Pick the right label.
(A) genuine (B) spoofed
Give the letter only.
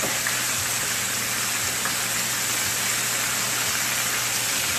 A